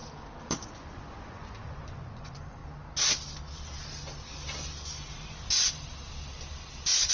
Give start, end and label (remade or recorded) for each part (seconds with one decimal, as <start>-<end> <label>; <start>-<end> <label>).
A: 0.0-0.7 recorded; 0.7-2.6 remade; 2.6-7.1 recorded

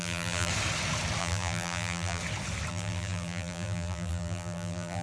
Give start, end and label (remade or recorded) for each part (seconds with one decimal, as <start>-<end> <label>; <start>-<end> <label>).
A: 0.0-0.5 remade; 0.5-1.2 recorded; 1.2-2.2 remade; 2.2-2.7 recorded; 2.7-5.0 remade